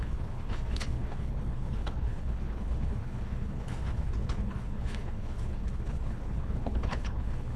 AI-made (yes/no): yes